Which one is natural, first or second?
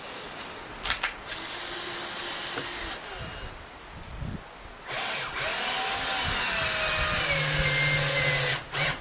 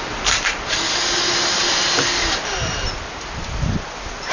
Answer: first